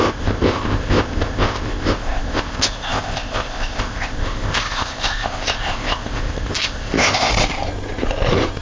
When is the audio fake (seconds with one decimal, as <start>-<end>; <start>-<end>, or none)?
0.0-7.3